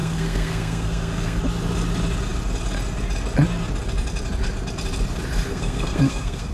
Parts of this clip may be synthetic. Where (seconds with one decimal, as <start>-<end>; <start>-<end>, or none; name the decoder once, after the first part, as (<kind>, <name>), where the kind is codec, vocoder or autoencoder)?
0.0-1.4 (codec, SNAC); 5.5-6.5